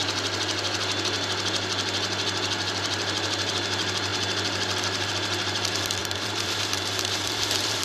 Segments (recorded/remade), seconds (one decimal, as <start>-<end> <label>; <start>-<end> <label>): 0.0-6.0 recorded; 6.0-7.8 remade